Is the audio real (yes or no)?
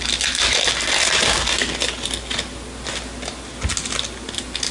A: yes